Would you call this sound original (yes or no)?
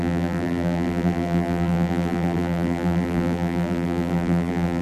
no